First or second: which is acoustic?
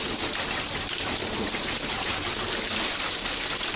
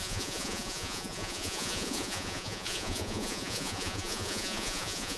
first